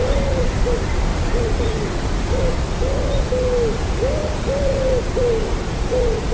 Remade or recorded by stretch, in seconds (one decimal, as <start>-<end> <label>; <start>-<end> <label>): 0.0-0.5 remade; 0.5-1.1 recorded; 1.1-1.8 remade; 1.8-4.2 recorded; 4.2-5.4 remade; 5.4-6.3 recorded